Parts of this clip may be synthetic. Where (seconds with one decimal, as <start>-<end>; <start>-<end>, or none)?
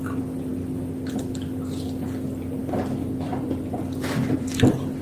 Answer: none